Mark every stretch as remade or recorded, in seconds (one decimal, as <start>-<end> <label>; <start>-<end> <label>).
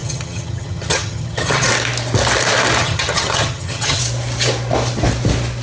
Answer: 0.0-1.7 remade; 1.7-2.8 recorded; 2.8-4.0 remade; 4.0-5.6 recorded